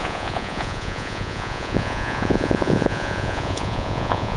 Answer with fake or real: fake